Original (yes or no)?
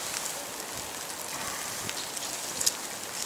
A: yes